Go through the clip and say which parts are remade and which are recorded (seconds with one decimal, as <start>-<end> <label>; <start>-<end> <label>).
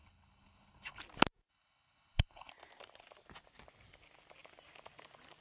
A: 0.0-1.0 remade; 1.0-1.5 recorded; 1.5-2.5 remade; 2.5-5.4 recorded